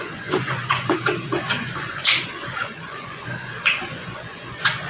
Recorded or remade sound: remade